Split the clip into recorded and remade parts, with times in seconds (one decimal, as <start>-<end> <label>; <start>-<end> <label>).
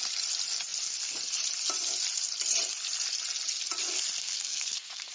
0.0-4.2 recorded; 4.2-5.1 remade